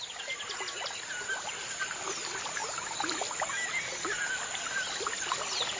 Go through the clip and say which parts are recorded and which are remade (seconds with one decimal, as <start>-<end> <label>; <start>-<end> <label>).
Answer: 0.0-5.8 recorded